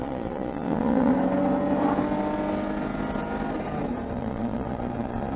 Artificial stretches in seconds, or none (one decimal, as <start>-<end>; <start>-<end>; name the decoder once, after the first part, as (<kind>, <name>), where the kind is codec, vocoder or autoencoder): 0.0-1.1 (vocoder, Vocos); 4.1-5.4